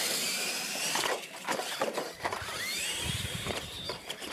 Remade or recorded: remade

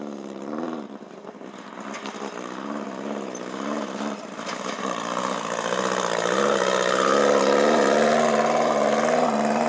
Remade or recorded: recorded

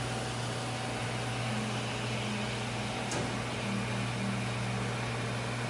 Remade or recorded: recorded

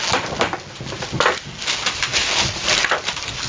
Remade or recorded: remade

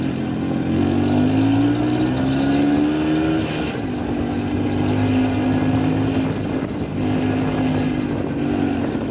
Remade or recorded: recorded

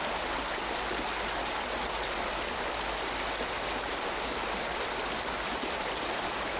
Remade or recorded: recorded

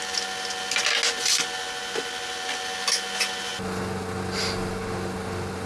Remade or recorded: recorded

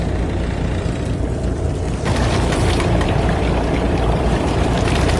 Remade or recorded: remade